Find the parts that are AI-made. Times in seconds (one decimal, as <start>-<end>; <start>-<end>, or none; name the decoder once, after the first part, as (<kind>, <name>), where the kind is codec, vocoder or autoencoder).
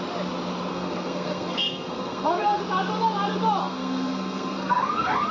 0.7-2.6 (codec, SNAC); 3.6-5.3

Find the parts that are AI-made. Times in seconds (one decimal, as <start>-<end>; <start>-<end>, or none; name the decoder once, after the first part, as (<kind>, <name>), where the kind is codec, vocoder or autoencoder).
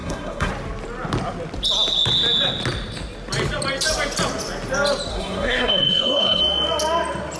0.0-0.5 (codec, SNAC); 5.1-6.4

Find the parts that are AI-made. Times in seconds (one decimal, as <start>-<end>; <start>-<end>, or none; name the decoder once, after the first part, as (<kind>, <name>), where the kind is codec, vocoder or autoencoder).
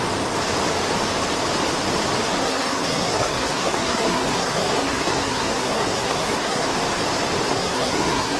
2.4-6.6 (codec, SNAC); 7.5-8.4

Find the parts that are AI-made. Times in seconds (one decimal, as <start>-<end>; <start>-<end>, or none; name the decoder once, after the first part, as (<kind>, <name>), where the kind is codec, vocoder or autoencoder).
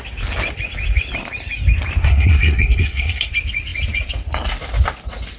2.0-3.3 (codec, SNAC)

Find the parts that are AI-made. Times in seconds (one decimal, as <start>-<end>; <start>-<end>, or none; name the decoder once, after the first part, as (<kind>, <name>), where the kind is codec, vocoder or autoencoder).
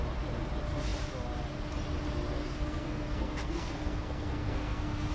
2.4-5.1 (codec, SNAC)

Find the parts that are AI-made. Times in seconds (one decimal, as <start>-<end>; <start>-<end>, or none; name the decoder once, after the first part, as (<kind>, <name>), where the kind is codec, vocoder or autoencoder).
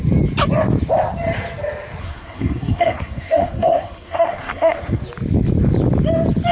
2.0-5.0 (codec, SNAC)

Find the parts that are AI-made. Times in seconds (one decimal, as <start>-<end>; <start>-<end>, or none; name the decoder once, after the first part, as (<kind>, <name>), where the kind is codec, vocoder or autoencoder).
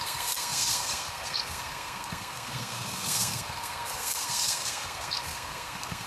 0.0-6.1 (codec, SNAC)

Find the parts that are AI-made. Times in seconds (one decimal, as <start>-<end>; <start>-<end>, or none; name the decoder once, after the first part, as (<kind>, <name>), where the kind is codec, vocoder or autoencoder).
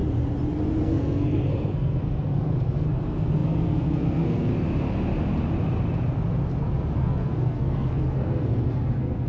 0.8-4.5 (codec, SNAC); 7.0-9.3